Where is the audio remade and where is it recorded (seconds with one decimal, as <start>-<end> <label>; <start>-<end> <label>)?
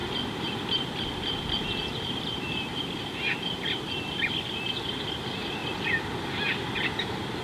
0.0-4.3 remade; 4.3-7.4 recorded